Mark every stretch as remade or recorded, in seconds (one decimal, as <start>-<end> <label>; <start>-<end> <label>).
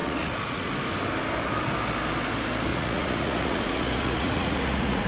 0.0-0.7 remade; 0.7-2.7 recorded; 2.7-5.1 remade